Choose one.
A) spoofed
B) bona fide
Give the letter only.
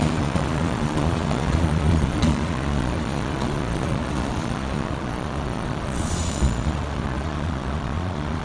A